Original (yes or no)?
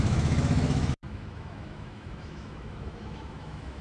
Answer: no